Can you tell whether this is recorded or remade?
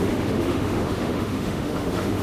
remade